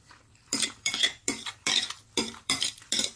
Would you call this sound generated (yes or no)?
yes